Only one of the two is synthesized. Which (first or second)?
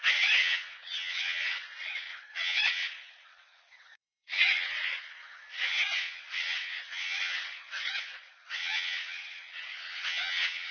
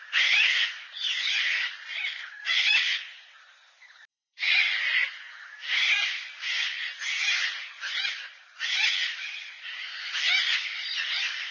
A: first